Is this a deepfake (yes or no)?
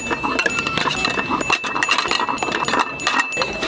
no